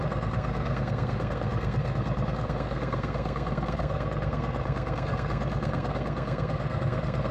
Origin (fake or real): fake